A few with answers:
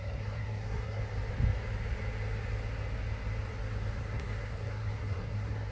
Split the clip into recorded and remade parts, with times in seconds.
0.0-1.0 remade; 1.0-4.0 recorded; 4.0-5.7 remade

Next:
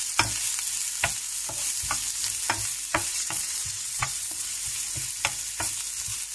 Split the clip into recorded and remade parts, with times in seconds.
0.0-2.9 recorded; 2.9-4.6 remade; 4.6-6.3 recorded

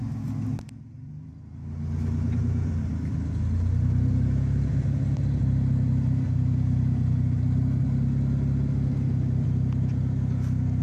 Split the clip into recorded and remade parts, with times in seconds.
0.0-10.8 recorded